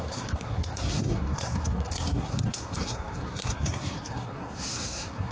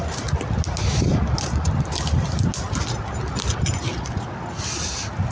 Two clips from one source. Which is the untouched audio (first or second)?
second